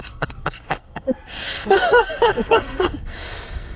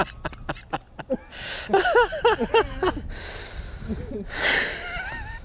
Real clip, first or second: second